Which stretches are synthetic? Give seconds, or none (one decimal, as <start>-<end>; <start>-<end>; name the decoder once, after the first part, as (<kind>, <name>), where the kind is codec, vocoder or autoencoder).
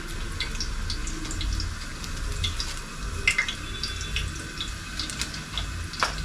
none